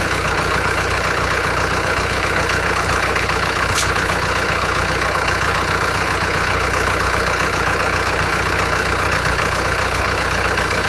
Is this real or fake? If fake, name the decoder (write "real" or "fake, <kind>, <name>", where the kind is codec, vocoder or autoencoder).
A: fake, codec, HILCodec